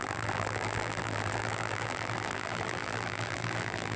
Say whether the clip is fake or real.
fake